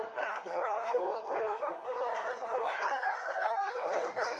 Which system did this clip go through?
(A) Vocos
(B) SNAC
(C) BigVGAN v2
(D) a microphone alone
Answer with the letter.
B